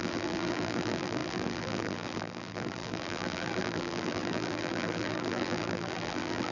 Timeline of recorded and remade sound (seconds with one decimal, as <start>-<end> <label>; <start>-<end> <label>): 0.0-6.5 remade